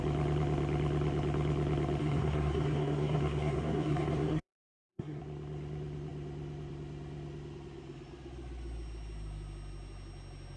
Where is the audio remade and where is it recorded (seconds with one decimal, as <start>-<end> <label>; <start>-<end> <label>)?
0.0-2.0 recorded; 2.0-5.2 remade; 5.2-10.6 recorded

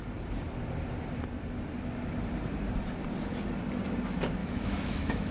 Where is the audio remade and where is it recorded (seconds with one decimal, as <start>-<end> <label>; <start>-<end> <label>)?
0.0-4.4 recorded; 4.4-5.3 remade

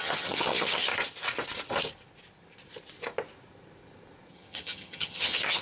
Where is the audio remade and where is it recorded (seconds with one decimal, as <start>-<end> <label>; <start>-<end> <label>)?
0.0-0.9 remade; 0.9-4.3 recorded; 4.3-5.6 remade

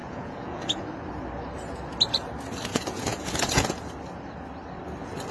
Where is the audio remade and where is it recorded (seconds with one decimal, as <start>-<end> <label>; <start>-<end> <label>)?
0.0-0.8 remade; 0.8-2.7 recorded; 2.7-3.9 remade; 3.9-5.3 recorded

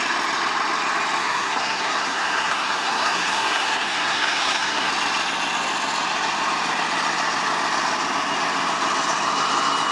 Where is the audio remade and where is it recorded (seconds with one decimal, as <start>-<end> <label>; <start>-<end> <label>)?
0.0-1.2 recorded; 1.2-4.9 remade; 4.9-9.9 recorded

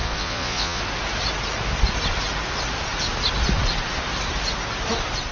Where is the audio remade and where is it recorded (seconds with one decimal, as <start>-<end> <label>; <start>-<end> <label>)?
0.0-0.8 remade; 0.8-5.3 recorded